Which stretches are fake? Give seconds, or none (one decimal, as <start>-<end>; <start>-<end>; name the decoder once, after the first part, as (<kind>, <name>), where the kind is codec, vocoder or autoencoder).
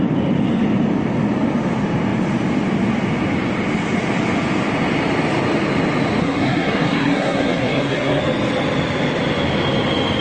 6.2-8.2 (codec, SNAC)